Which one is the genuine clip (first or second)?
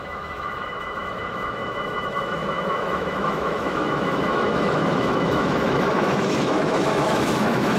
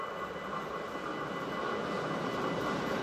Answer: second